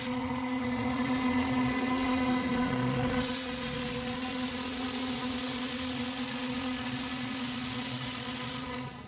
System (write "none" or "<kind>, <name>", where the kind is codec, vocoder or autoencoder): vocoder, Vocos